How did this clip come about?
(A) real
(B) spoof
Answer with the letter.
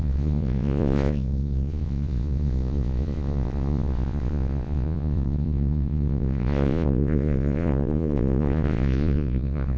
B